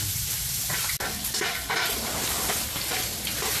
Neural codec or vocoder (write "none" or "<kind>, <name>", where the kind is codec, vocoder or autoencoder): none